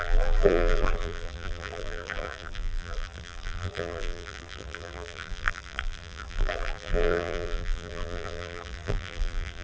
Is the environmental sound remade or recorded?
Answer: remade